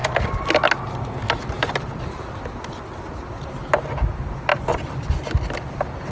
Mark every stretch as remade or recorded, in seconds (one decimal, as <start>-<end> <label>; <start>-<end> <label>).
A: 0.0-6.1 recorded